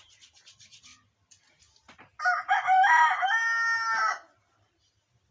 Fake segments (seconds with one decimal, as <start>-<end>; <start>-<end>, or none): none